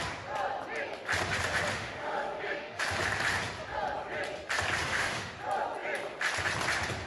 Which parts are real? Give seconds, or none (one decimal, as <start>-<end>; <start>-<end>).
0.0-1.7; 2.8-4.8; 5.3-7.1